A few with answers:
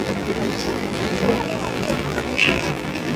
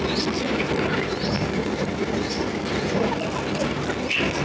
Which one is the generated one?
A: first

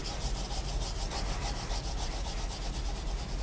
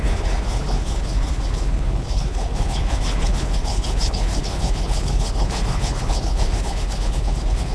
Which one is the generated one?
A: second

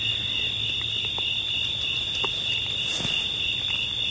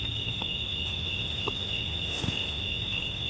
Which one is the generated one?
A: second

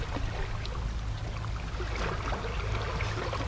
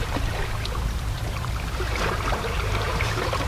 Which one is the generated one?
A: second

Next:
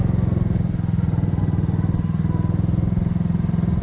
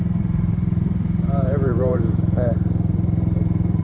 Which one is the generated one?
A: second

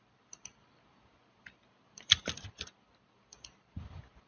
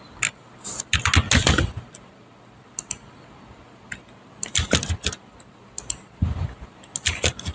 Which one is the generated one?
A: first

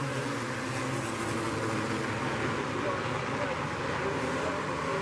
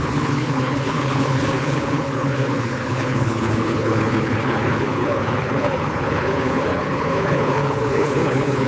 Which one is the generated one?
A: second